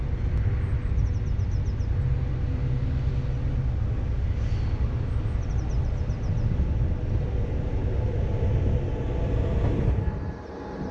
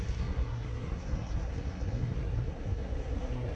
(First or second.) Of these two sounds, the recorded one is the first